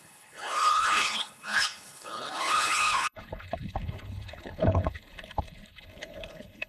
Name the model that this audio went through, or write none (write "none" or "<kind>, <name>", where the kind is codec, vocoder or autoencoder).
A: codec, HILCodec